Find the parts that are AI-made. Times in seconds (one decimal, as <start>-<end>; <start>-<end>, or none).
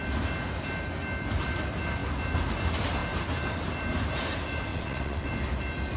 4.7-5.3